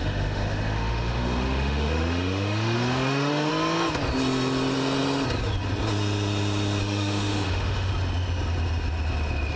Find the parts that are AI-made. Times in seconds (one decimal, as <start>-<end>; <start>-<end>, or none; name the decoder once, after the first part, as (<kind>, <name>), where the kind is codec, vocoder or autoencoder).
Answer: 0.0-3.5 (autoencoder, DAC-VAE); 6.8-7.9